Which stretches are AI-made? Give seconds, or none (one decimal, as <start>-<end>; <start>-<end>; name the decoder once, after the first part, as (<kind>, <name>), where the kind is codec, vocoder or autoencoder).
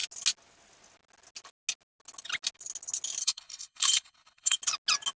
3.2-4.6 (codec, HILCodec)